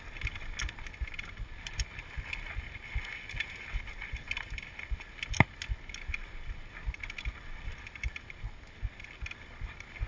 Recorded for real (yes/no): yes